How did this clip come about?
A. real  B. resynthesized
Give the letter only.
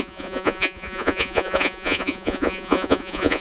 B